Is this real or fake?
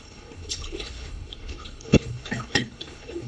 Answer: fake